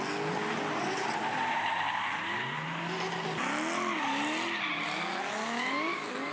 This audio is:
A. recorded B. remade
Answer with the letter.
A